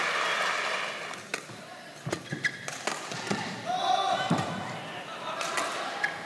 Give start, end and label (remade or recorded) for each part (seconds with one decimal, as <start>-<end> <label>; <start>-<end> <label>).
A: 0.0-6.3 recorded